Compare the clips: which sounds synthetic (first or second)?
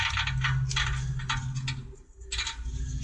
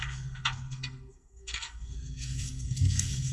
second